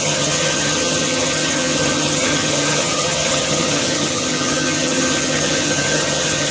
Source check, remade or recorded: remade